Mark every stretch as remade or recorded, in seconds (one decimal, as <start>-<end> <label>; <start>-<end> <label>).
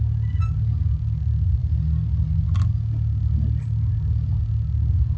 0.0-5.2 recorded